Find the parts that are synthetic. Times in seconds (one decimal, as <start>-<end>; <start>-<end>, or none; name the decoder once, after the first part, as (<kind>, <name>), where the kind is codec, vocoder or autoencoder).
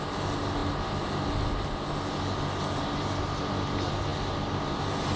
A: none